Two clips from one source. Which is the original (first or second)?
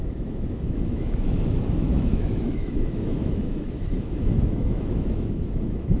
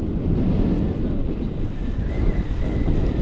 second